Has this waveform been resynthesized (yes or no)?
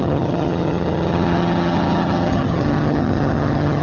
yes